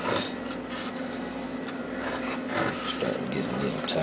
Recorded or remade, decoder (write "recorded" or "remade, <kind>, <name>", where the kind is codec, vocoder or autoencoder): recorded